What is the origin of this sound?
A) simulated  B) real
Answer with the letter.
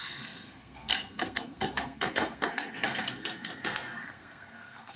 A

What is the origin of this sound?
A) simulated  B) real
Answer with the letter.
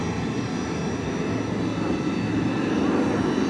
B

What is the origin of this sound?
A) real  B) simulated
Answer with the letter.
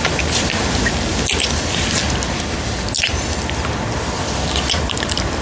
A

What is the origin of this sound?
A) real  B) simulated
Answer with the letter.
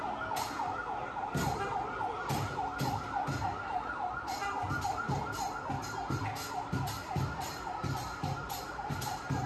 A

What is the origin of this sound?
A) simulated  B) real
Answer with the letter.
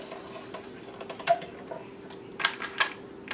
B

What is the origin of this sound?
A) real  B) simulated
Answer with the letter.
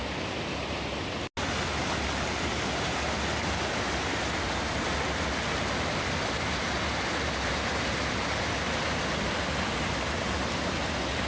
A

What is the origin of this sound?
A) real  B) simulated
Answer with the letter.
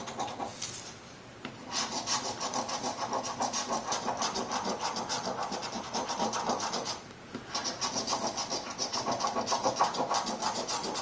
A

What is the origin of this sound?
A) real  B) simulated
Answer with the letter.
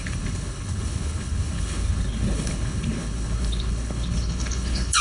B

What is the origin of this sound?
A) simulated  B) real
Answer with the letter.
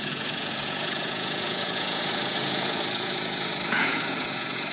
A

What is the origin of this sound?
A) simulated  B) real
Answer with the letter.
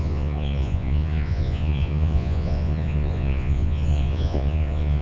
A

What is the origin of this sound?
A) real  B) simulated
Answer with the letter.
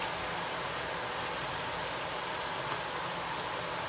A